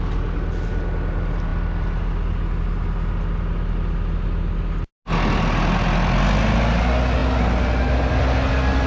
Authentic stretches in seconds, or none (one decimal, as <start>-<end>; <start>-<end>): 0.0-8.9